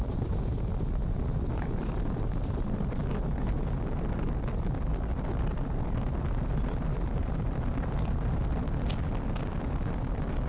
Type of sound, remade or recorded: recorded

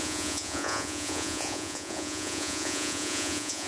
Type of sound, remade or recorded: remade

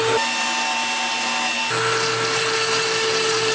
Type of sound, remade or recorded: recorded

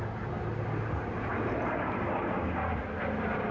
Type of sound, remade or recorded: recorded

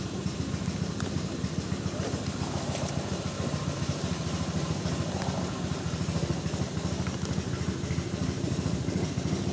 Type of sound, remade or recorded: recorded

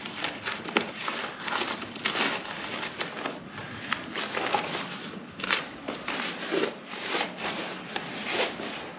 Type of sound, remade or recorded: remade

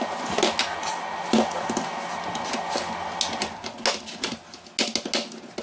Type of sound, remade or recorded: recorded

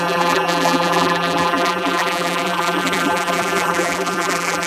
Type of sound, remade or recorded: remade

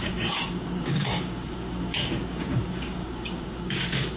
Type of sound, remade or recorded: remade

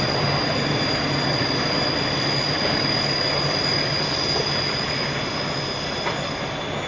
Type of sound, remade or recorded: recorded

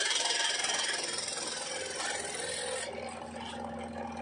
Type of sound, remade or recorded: recorded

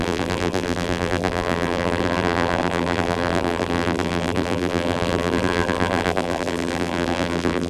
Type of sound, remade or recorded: remade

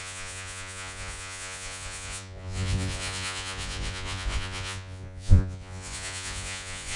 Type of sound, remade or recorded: remade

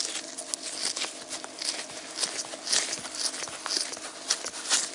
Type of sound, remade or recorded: recorded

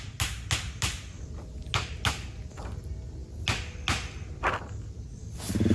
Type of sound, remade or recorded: recorded